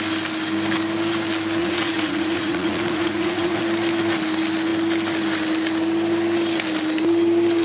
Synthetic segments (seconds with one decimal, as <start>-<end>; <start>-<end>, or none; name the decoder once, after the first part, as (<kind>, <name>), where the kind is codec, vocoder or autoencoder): 1.6-3.6 (vocoder, Vocos)